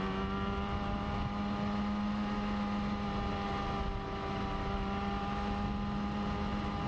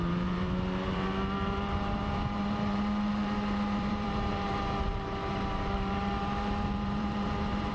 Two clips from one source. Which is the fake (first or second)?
second